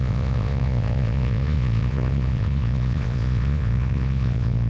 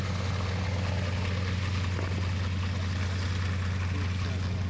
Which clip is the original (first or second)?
second